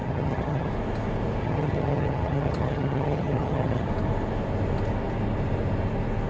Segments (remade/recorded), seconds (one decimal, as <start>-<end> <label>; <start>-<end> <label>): 0.0-0.7 remade; 0.7-1.4 recorded; 1.4-3.9 remade; 3.9-6.3 recorded